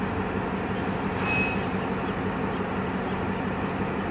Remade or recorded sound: recorded